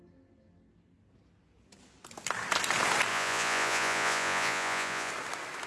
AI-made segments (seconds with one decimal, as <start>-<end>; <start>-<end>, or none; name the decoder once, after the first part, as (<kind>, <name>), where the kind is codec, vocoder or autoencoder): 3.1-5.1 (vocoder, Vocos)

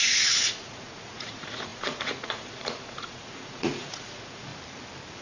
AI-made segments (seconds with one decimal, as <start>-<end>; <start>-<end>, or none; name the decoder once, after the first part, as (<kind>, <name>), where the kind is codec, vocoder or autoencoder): 0.0-4.5 (vocoder, Vocos)

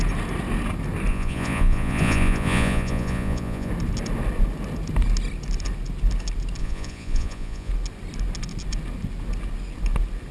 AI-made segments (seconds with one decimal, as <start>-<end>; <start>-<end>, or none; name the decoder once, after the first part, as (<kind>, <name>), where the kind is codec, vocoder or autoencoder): 1.1-3.7 (vocoder, Vocos); 6.6-7.7